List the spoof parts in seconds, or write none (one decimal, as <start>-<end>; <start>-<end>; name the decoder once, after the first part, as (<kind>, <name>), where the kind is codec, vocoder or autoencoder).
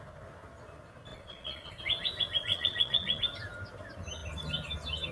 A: 1.1-1.7 (vocoder, Vocos); 2.5-3.2